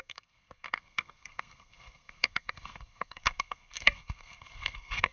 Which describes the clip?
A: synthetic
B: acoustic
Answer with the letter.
A